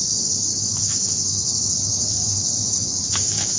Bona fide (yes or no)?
no